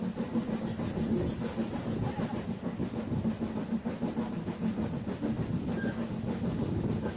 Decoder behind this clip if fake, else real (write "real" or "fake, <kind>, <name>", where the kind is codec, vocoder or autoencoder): real